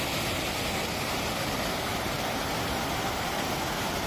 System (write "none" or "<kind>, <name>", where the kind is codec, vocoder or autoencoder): none